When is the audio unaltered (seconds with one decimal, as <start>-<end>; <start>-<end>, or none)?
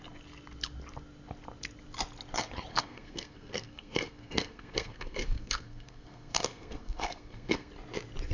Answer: 0.0-2.7; 7.7-8.3